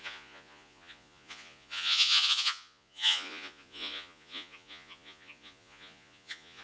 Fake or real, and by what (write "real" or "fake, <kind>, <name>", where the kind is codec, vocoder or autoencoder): fake, vocoder, Vocos